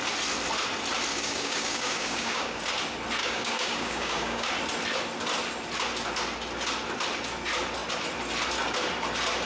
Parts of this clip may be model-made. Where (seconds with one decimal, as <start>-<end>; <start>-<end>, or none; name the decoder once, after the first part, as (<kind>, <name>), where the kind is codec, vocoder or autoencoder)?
1.1-2.6 (codec, DAC); 3.2-4.5